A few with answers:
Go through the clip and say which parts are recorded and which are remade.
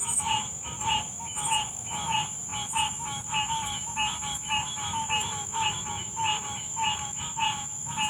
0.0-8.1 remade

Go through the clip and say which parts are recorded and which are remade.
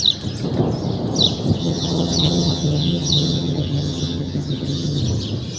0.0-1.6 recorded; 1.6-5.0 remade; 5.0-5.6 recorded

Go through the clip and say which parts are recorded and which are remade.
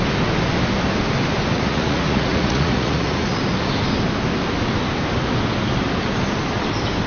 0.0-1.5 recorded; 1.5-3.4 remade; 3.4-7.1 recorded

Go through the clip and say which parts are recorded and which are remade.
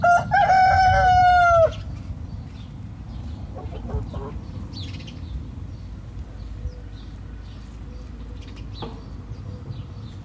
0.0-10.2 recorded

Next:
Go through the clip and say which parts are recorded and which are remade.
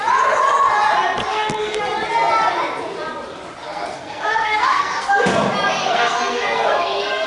0.0-1.3 recorded; 1.3-1.8 remade; 1.8-3.6 recorded; 3.6-5.1 remade; 5.1-5.8 recorded; 5.8-7.3 remade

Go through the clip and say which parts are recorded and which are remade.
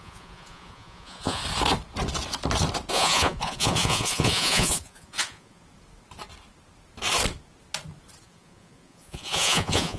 0.0-1.4 remade; 1.4-2.9 recorded; 2.9-5.6 remade; 5.6-8.2 recorded; 8.2-10.0 remade